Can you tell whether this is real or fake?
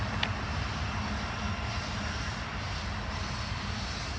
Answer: real